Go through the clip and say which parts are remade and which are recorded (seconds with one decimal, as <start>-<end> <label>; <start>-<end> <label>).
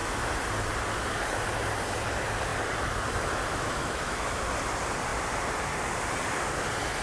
0.0-3.5 recorded; 3.5-4.4 remade; 4.4-7.0 recorded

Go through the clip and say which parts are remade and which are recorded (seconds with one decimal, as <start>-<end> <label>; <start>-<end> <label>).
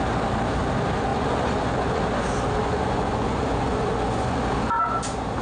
0.0-1.1 recorded; 1.1-2.0 remade; 2.0-2.6 recorded; 2.6-4.4 remade; 4.4-5.4 recorded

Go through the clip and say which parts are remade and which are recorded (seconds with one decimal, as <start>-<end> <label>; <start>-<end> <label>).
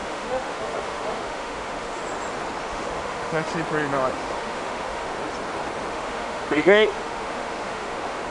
0.0-2.0 remade; 2.0-2.6 recorded; 2.6-3.5 remade; 3.5-4.1 recorded; 4.1-5.2 remade; 5.2-5.9 recorded; 5.9-8.3 remade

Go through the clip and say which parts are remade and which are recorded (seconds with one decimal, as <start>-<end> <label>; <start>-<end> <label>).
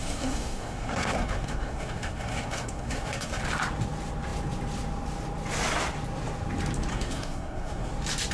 0.0-3.4 remade; 3.4-6.9 recorded; 6.9-7.9 remade; 7.9-8.3 recorded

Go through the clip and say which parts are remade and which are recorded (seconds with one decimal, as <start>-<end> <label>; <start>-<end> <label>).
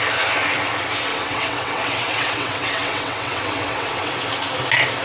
0.0-1.1 recorded; 1.1-4.1 remade; 4.1-5.0 recorded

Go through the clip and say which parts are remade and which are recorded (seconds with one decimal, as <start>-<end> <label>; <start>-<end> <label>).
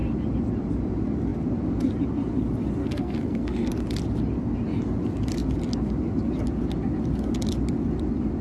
0.0-2.8 recorded; 2.8-3.7 remade; 3.7-8.4 recorded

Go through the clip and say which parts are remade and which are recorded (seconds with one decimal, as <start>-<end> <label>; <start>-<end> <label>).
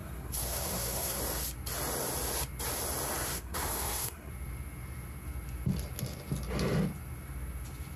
0.0-1.2 remade; 1.2-3.3 recorded; 3.3-4.3 remade; 4.3-8.0 recorded